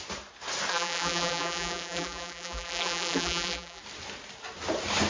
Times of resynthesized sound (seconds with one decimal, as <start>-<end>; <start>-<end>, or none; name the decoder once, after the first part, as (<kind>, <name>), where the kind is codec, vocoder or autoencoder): 0.7-3.8 (vocoder, BigVGAN v2)